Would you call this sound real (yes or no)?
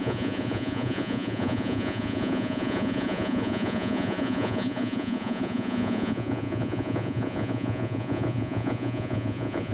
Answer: no